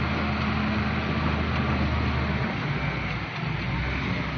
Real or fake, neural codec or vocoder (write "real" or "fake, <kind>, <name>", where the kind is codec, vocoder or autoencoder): real